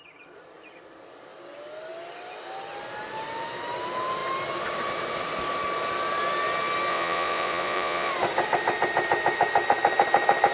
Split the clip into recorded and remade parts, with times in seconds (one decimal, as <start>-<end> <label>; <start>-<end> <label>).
0.0-6.9 recorded; 6.9-8.1 remade; 8.1-10.5 recorded